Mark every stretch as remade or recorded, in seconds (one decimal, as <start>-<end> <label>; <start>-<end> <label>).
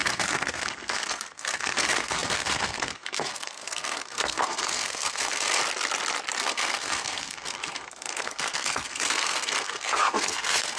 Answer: 0.0-5.6 remade; 5.6-6.4 recorded; 6.4-10.8 remade